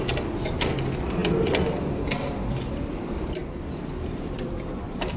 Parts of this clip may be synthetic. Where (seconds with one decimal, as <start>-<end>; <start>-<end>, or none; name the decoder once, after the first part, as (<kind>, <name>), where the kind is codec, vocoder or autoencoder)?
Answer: none